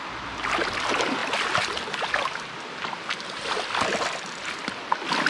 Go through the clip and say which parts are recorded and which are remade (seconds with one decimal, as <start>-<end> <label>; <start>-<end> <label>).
0.0-5.3 recorded

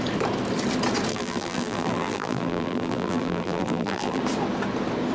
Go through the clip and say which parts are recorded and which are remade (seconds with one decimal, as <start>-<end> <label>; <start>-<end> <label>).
0.0-1.1 recorded; 1.1-4.2 remade; 4.2-5.1 recorded

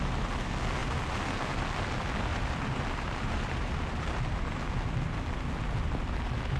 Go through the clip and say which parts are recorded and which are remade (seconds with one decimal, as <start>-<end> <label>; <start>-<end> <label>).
0.0-2.3 recorded; 2.3-4.7 remade; 4.7-6.6 recorded

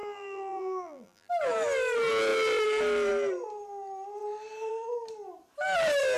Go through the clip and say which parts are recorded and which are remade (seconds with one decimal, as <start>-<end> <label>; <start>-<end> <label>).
0.0-1.3 remade; 1.3-6.2 recorded

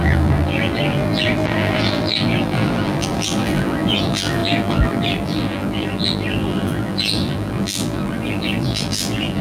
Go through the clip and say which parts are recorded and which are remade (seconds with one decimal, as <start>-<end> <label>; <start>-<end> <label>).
0.0-9.4 remade

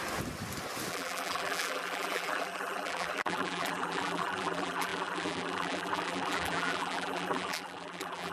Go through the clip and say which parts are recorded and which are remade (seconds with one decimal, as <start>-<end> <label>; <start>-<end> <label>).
0.0-0.9 recorded; 0.9-8.3 remade